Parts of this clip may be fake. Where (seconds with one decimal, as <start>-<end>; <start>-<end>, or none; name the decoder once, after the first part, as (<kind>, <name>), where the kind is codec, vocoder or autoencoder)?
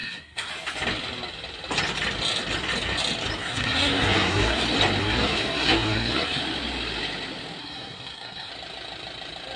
0.0-0.5 (codec, SNAC); 3.4-4.6; 5.0-6.4; 7.6-8.5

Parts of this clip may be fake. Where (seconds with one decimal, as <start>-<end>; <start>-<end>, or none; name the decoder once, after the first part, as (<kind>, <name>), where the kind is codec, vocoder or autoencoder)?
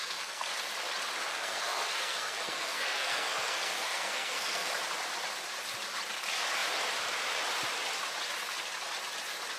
0.0-0.5 (codec, SNAC); 1.3-4.7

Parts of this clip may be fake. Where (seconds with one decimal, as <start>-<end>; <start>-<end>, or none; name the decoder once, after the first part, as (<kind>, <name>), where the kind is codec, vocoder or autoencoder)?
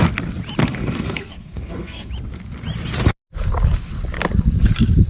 0.6-2.1 (codec, SNAC)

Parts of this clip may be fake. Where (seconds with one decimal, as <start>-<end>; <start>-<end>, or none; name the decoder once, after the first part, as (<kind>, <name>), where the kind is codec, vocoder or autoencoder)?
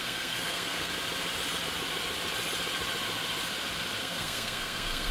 0.0-0.9 (codec, SNAC); 4.0-5.1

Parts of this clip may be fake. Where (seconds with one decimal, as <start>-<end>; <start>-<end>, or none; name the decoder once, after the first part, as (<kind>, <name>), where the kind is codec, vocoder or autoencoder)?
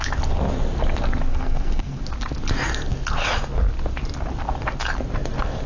1.3-2.0 (codec, SNAC)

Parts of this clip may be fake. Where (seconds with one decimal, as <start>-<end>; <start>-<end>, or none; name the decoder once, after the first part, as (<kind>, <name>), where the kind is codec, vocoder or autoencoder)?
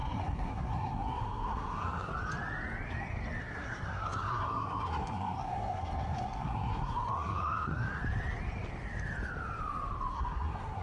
0.0-2.1 (codec, SNAC); 3.4-8.0; 10.1-10.8